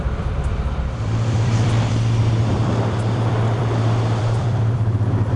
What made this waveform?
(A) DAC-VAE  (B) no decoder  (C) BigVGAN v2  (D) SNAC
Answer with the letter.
C